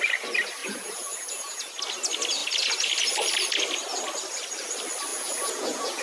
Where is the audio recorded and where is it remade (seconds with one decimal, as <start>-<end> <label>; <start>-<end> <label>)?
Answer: 0.0-0.6 recorded; 0.6-1.7 remade; 1.7-5.1 recorded; 5.1-6.0 remade

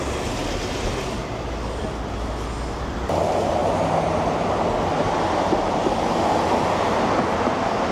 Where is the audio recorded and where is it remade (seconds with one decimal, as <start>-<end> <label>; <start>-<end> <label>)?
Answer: 0.0-7.9 recorded

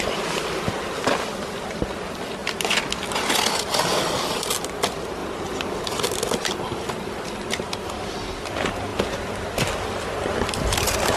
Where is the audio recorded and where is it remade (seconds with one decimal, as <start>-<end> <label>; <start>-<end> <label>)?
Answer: 0.0-11.2 recorded